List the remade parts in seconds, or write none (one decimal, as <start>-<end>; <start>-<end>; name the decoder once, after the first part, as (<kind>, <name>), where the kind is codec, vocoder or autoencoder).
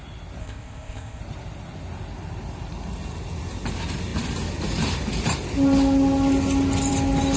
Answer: 0.4-1.2 (codec, ZipCodec)